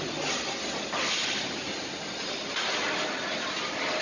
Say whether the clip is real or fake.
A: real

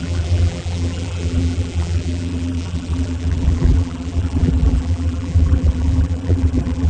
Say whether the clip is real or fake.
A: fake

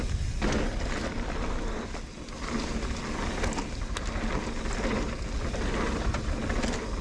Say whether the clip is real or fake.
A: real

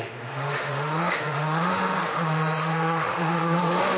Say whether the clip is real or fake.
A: fake